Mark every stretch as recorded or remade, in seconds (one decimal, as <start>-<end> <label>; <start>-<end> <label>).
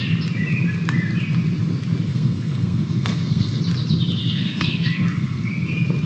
0.0-2.1 recorded; 2.1-3.6 remade; 3.6-4.2 recorded; 4.2-5.5 remade; 5.5-6.1 recorded